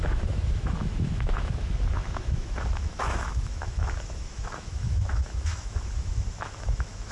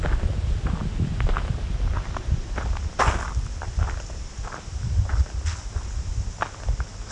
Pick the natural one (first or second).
second